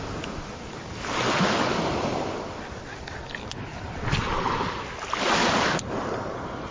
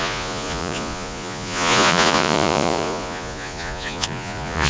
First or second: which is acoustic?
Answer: first